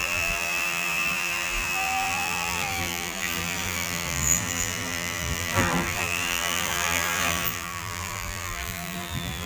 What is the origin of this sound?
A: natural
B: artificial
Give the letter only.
B